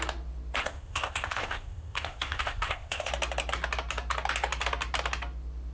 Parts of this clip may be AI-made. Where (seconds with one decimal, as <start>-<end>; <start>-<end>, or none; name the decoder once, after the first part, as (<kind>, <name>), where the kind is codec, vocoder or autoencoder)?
0.6-3.1 (codec, ZipCodec)